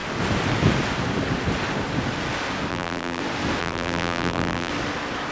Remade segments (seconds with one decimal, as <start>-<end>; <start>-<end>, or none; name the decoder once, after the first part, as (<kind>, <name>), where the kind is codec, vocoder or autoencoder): 2.7-3.2 (vocoder, BigVGAN v2); 3.6-4.7